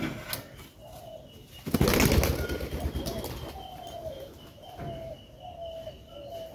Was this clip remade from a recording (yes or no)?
no